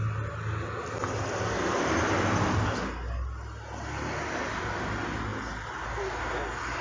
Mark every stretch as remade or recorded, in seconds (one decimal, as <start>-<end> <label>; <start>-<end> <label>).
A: 0.0-6.8 recorded